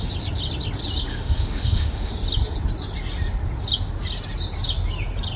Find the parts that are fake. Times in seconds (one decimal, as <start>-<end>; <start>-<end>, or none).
1.1-2.1